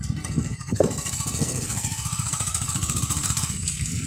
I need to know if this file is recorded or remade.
remade